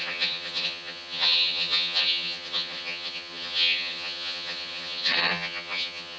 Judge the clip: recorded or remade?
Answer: remade